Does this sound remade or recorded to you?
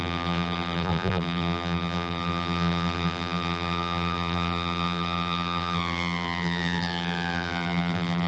remade